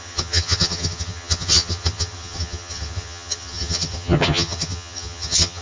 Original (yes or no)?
no